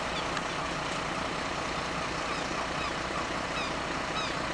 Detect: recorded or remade recorded